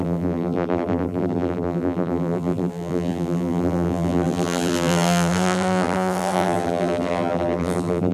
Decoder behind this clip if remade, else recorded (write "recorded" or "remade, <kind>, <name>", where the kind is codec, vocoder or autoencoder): remade, vocoder, BigVGAN v2